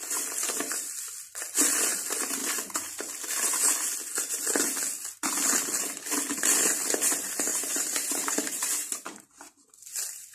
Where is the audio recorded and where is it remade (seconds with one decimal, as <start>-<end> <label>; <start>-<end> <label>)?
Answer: 0.0-7.5 recorded; 7.5-9.0 remade; 9.0-10.3 recorded